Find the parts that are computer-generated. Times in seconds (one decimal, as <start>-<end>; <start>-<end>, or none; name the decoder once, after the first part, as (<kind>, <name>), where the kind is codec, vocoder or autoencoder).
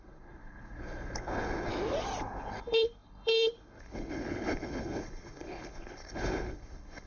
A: 0.0-1.7 (codec, HILCodec); 2.2-7.1